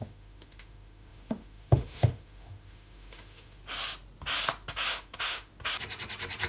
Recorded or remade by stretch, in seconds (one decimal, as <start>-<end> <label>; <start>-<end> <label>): 0.0-3.6 remade; 3.6-4.9 recorded; 4.9-5.5 remade; 5.5-6.5 recorded